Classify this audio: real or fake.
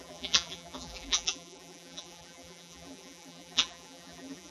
fake